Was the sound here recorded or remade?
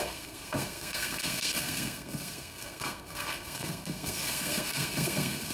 remade